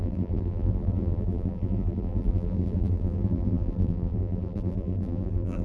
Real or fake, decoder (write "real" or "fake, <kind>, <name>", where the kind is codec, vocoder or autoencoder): fake, vocoder, BigVGAN v2